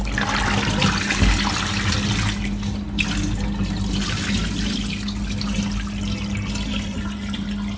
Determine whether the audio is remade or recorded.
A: recorded